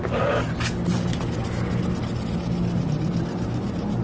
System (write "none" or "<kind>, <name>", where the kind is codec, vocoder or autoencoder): none